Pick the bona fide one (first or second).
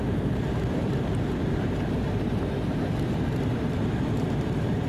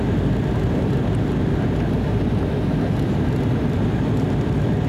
second